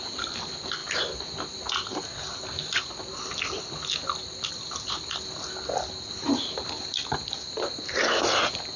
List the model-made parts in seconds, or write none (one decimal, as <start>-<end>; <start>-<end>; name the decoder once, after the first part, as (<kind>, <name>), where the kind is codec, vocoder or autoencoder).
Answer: none